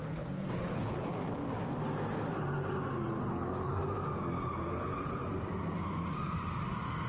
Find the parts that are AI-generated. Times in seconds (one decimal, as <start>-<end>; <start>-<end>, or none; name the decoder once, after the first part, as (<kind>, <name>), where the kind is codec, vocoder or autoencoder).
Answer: 0.0-1.4 (codec, HILCodec); 3.2-3.8; 4.7-5.2